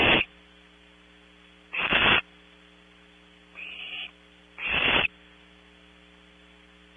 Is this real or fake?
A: real